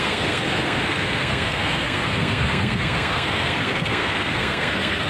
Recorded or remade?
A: remade